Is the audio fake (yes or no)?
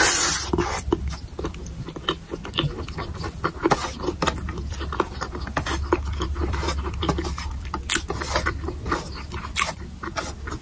no